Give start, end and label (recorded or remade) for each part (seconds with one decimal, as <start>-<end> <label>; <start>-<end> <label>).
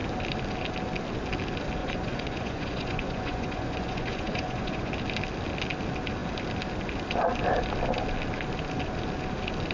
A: 0.0-1.8 recorded; 1.8-4.9 remade; 4.9-9.7 recorded